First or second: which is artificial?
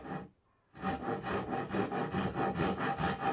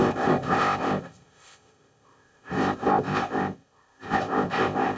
second